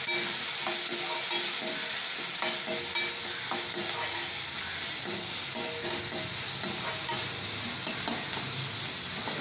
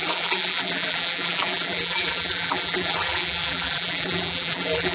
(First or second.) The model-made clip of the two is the second